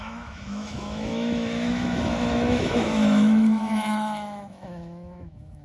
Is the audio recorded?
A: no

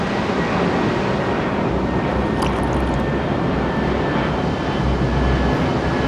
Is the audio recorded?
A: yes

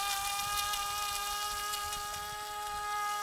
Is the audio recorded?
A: yes